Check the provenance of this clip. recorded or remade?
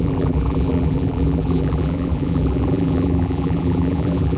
remade